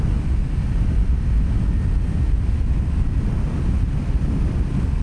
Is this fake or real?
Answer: real